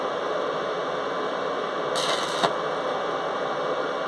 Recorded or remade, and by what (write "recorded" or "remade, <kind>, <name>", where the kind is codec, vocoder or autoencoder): recorded